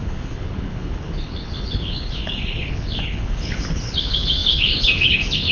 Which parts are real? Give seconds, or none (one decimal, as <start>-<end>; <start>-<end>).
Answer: none